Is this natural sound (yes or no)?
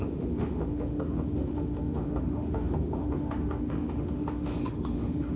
no